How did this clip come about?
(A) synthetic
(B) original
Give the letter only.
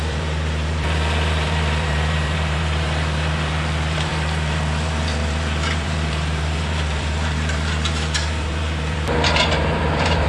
A